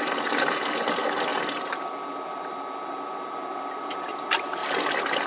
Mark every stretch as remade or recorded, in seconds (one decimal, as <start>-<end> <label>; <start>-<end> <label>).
0.0-1.3 remade; 1.3-3.8 recorded; 3.8-4.6 remade; 4.6-5.3 recorded